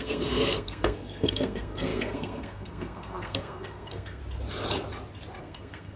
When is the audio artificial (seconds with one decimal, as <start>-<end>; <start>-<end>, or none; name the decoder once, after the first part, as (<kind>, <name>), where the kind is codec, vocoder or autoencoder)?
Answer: 0.0-4.2 (codec, SNAC); 5.4-6.0